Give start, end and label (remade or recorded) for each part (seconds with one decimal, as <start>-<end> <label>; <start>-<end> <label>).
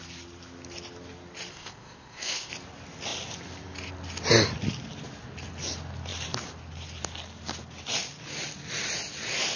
0.0-1.5 recorded; 1.5-2.5 remade; 2.5-9.6 recorded